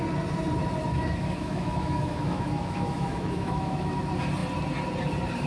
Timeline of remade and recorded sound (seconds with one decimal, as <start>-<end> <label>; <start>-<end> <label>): 0.0-0.9 recorded; 0.9-4.0 remade; 4.0-5.5 recorded